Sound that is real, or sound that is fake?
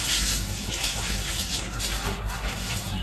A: fake